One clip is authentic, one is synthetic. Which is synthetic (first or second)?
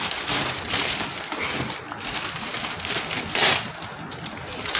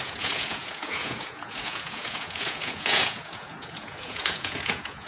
second